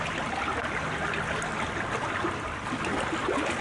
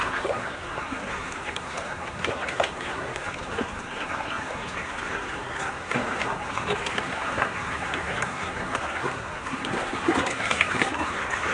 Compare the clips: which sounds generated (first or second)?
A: second